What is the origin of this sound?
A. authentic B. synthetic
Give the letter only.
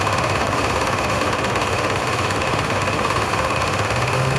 B